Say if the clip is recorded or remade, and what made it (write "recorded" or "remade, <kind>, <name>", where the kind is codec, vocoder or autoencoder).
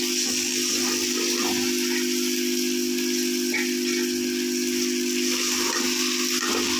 recorded